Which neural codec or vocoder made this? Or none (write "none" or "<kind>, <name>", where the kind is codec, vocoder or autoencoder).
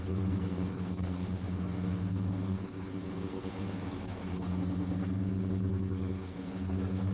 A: codec, SNAC